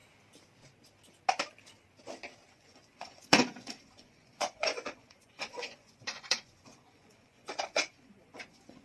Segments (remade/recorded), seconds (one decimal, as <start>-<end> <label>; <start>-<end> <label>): 0.0-2.5 recorded; 2.5-8.8 remade